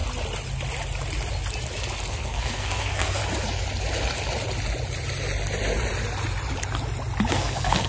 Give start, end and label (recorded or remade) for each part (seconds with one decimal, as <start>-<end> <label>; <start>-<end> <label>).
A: 0.0-2.1 recorded; 2.1-3.2 remade; 3.2-7.3 recorded; 7.3-7.9 remade